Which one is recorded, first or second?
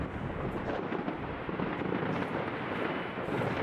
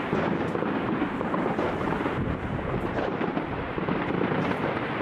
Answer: first